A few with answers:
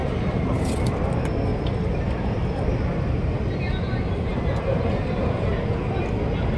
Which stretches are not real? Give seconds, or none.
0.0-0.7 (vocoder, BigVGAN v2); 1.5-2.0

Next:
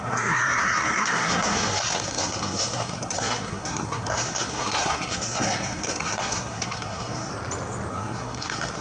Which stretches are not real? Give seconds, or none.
0.0-7.3 (codec, SNAC); 7.9-8.8

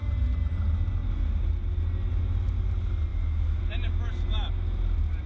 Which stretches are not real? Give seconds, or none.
3.1-3.6 (autoencoder, DAC-VAE)

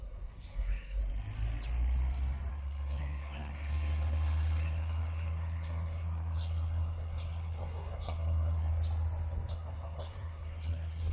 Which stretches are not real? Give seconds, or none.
0.0-1.0 (codec, SNAC); 2.5-8.7; 9.5-11.1